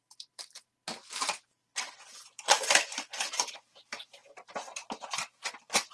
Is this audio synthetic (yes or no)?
no